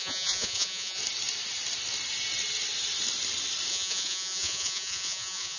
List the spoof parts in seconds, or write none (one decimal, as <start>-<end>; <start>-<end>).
0.0-1.0; 3.7-5.6